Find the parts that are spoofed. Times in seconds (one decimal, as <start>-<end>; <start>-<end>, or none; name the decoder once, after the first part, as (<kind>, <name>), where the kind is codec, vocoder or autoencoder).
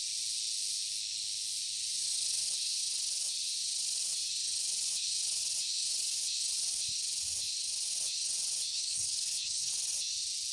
8.7-9.7 (codec, HILCodec)